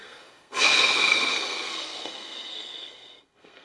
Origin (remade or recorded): remade